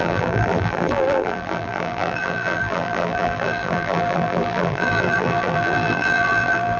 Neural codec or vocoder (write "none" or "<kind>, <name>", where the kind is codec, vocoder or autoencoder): vocoder, BigVGAN v2